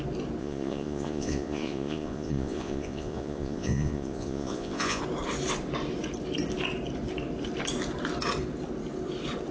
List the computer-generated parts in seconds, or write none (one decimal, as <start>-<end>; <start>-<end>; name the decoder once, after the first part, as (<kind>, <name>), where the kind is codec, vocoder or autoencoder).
0.4-5.0 (vocoder, Vocos)